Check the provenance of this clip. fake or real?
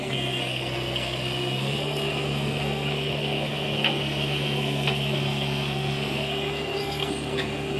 fake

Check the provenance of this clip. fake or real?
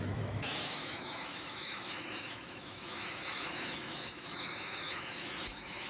fake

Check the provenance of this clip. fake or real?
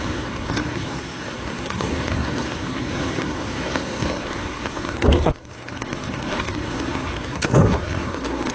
fake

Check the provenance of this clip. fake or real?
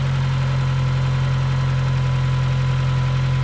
real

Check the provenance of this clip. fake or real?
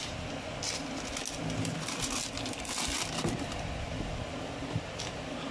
real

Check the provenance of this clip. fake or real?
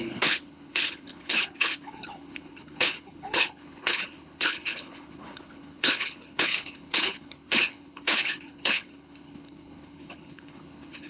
fake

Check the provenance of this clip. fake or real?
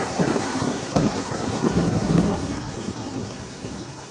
fake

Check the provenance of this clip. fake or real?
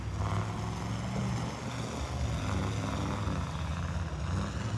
real